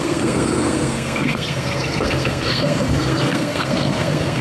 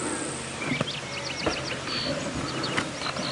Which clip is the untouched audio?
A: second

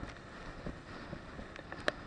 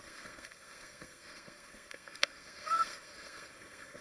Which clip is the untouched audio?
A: first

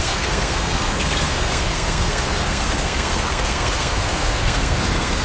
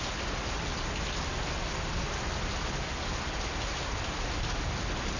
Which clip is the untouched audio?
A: second